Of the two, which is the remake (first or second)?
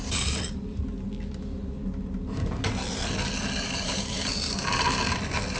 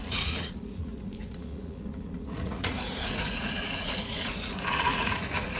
second